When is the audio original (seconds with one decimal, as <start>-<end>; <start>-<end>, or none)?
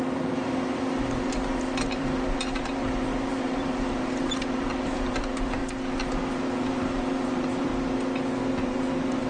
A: 5.6-6.3; 7.7-8.6